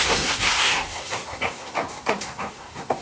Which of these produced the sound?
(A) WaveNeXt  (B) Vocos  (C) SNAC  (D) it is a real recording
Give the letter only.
C